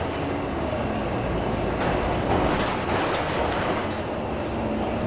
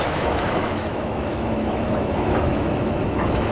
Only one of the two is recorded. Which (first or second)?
first